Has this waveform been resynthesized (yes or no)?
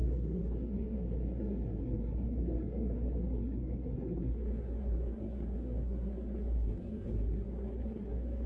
yes